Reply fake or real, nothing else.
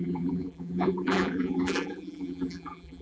fake